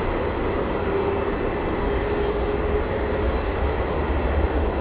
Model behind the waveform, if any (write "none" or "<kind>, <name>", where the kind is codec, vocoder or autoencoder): none